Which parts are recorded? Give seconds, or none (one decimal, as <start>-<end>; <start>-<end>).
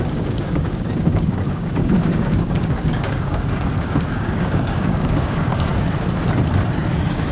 5.7-6.8